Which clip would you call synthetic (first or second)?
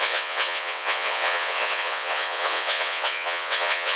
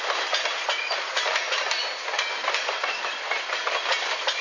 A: first